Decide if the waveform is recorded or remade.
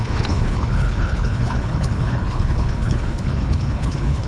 remade